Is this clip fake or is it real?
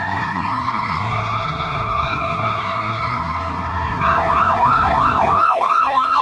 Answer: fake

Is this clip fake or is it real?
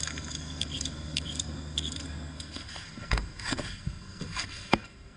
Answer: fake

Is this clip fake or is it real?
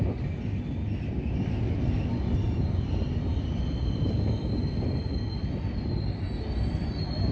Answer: real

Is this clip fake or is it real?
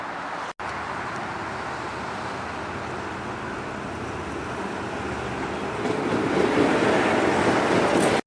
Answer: real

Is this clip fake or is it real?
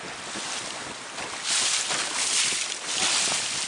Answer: real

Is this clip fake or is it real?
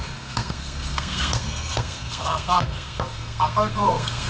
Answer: fake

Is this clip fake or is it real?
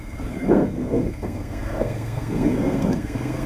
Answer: fake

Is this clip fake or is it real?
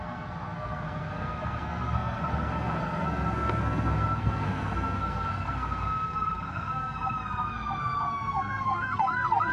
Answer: fake